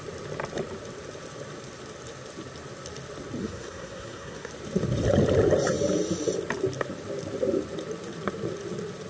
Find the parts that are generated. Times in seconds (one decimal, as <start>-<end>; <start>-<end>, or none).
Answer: 3.4-4.5